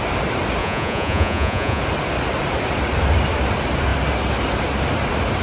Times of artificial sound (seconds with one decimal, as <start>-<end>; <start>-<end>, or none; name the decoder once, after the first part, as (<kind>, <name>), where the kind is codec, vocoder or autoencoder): 0.6-1.8 (vocoder, Vocos)